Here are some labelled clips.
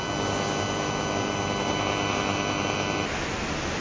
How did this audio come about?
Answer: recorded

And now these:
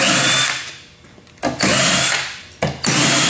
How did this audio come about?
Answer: recorded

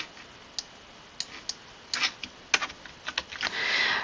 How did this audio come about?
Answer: recorded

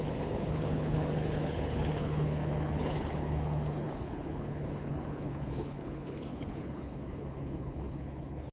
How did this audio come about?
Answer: remade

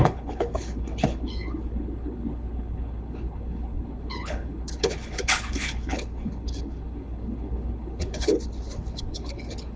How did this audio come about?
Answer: remade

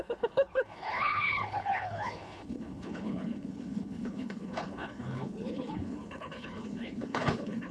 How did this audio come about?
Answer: remade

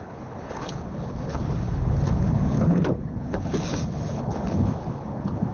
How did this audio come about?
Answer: remade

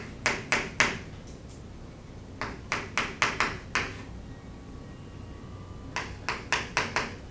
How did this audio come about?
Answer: recorded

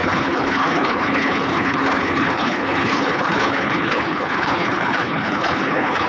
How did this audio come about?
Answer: remade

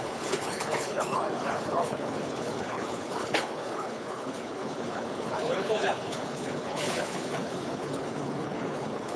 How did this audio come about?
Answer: remade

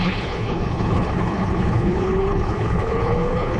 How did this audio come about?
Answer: remade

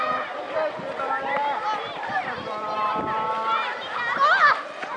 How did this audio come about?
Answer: recorded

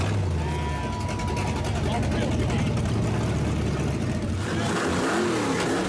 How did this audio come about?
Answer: recorded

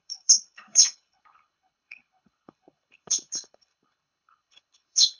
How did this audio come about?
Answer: remade